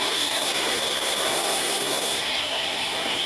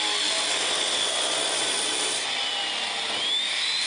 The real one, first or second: second